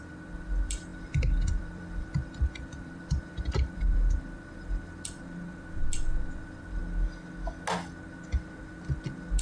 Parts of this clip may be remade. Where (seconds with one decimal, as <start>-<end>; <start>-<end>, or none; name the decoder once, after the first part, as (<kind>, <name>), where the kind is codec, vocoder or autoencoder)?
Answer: 0.0-6.8 (vocoder, BigVGAN v2)

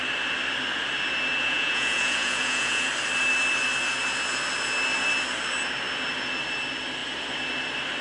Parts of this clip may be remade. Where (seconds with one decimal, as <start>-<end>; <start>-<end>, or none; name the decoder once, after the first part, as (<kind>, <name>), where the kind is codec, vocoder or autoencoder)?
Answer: 1.4-2.9 (vocoder, Vocos)

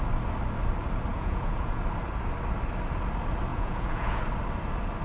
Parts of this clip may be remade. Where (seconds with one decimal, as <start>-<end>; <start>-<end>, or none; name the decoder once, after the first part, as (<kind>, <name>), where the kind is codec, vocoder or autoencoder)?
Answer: 1.1-1.8 (vocoder, Vocos); 3.5-4.2